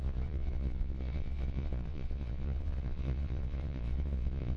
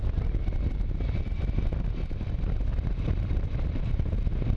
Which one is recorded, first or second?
second